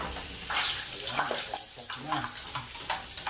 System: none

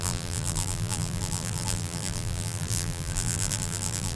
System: vocoder, BigVGAN v2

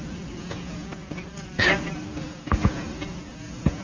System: vocoder, Vocos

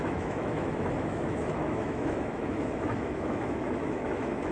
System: autoencoder, DAC-VAE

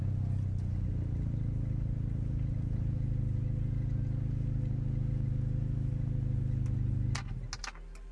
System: none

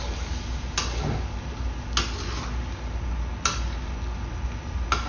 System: none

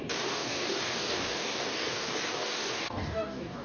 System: codec, DAC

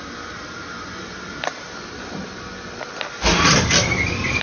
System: none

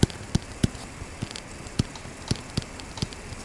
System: none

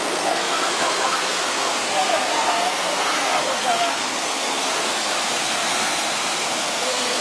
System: codec, SNAC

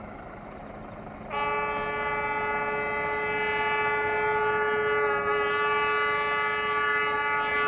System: none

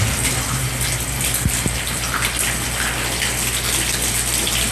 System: none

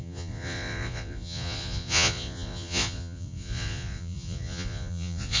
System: vocoder, Vocos